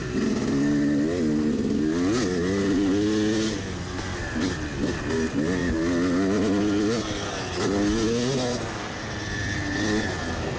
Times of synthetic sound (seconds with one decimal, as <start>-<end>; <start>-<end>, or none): none